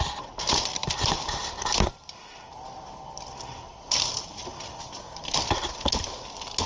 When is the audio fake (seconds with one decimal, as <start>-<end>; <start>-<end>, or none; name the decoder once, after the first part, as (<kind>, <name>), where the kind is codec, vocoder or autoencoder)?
none